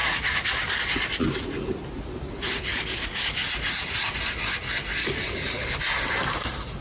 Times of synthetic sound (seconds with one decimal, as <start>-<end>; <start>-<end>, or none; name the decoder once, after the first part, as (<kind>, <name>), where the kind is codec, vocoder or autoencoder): 0.0-0.8 (codec, DAC); 2.7-3.5; 5.0-5.8